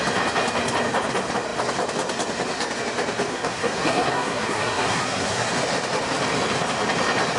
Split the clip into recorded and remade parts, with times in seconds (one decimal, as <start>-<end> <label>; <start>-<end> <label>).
0.0-3.3 recorded; 3.3-5.5 remade; 5.5-7.4 recorded